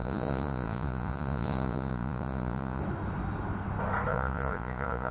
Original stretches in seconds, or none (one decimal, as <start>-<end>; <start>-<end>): 2.8-4.1